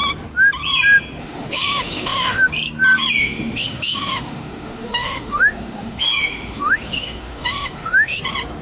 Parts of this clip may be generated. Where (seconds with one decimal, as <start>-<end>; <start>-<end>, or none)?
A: 1.2-2.5; 3.2-8.2